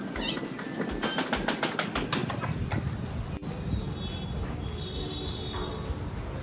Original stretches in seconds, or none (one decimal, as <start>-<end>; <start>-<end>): 0.0-6.4